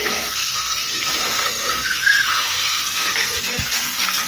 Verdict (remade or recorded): remade